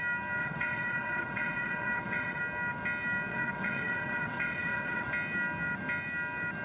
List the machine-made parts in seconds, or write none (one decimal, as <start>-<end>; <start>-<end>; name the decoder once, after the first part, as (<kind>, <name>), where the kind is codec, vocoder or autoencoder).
0.4-2.4 (vocoder, WaveNeXt); 3.3-5.1